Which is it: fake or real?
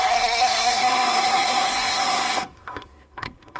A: fake